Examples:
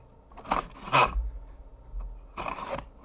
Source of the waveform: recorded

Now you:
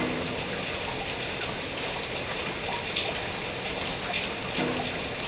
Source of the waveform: recorded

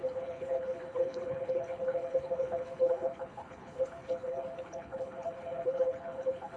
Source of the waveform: remade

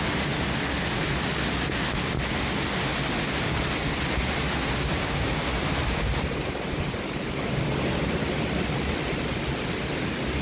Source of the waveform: recorded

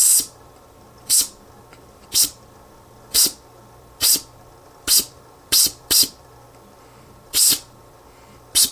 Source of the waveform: remade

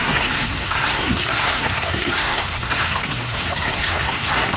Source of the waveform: remade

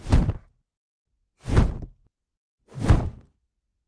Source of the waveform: recorded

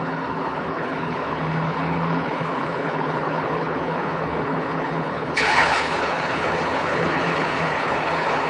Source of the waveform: remade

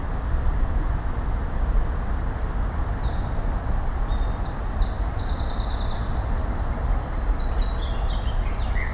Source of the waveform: recorded